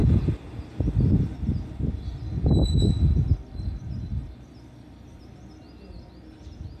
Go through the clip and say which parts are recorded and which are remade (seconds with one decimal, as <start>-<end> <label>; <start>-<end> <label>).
0.0-6.8 recorded